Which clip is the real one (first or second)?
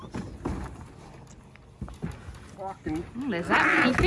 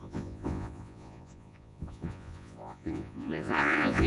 first